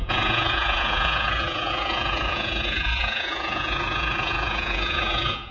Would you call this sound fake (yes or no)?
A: yes